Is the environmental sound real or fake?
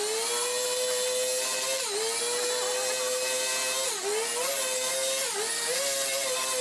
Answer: real